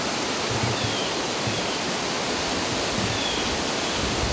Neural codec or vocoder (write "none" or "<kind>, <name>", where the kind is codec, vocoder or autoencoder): none